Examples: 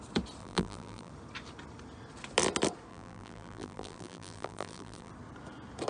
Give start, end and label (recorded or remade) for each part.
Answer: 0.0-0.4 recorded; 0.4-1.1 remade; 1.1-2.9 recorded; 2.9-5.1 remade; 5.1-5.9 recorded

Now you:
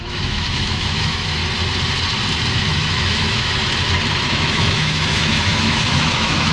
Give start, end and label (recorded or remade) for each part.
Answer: 0.0-1.4 remade; 1.4-2.5 recorded; 2.5-3.6 remade; 3.6-4.3 recorded; 4.3-6.5 remade

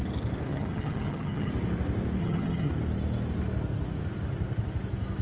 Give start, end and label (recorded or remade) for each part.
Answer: 0.0-0.5 recorded; 0.5-1.5 remade; 1.5-2.2 recorded; 2.2-2.7 remade; 2.7-5.2 recorded

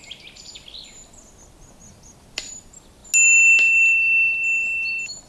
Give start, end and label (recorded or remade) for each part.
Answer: 0.0-5.3 recorded

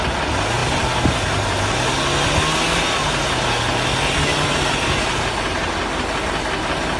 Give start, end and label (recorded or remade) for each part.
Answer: 0.0-7.0 recorded

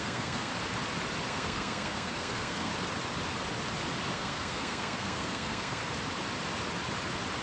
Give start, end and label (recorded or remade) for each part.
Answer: 0.0-0.5 remade; 0.5-1.3 recorded; 1.3-2.7 remade; 2.7-4.1 recorded; 4.1-5.8 remade; 5.8-7.4 recorded

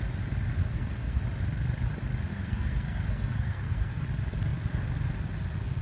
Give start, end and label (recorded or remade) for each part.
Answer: 0.0-0.6 recorded; 0.6-1.2 remade; 1.2-2.3 recorded; 2.3-4.0 remade; 4.0-5.8 recorded